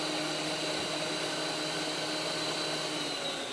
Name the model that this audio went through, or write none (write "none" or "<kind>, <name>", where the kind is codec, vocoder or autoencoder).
none